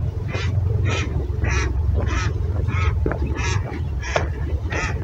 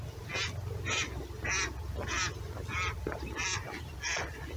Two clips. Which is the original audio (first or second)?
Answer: second